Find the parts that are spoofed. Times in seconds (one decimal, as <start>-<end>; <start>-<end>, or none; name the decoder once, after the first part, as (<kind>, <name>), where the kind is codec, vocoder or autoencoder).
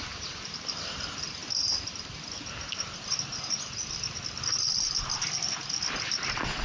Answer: none